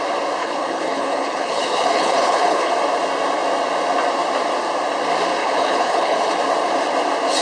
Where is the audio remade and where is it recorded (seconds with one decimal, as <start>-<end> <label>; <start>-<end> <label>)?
0.0-0.4 recorded; 0.4-2.7 remade; 2.7-5.4 recorded; 5.4-6.4 remade; 6.4-7.4 recorded